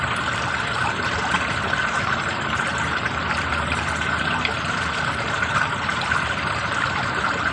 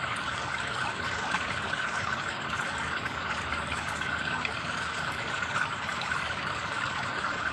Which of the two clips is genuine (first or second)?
first